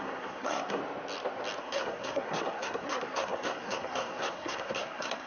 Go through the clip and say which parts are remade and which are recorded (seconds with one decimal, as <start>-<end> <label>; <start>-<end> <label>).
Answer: 0.0-0.8 remade; 0.8-1.6 recorded; 1.6-5.3 remade